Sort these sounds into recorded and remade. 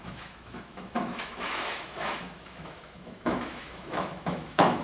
remade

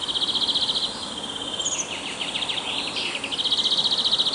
recorded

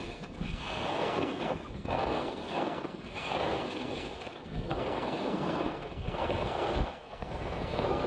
remade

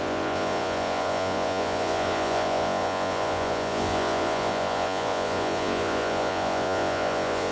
remade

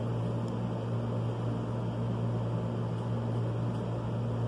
recorded